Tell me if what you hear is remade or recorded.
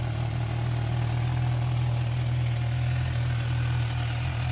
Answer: recorded